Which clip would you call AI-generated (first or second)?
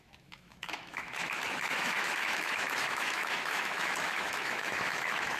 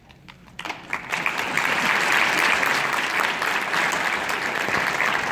first